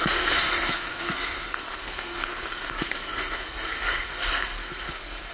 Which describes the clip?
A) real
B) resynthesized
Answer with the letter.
B